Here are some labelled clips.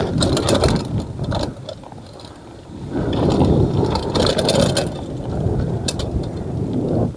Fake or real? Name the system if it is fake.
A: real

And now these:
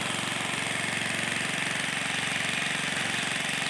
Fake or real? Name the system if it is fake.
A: real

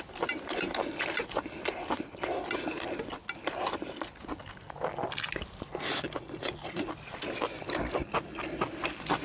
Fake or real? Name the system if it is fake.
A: real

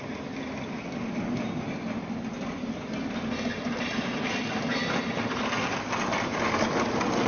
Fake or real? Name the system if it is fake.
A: real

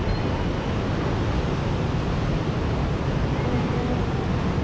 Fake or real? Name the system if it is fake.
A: real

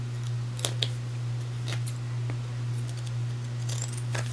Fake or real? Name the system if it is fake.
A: real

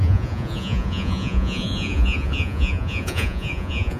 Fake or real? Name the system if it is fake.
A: fake, vocoder, Vocos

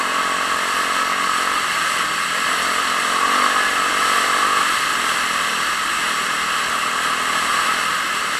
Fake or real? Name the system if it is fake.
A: fake, vocoder, BigVGAN v2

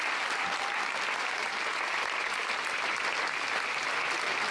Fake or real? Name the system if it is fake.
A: real